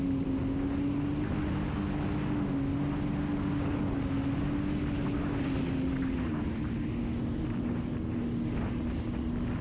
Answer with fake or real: real